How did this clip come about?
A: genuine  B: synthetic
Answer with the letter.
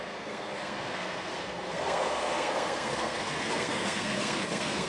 B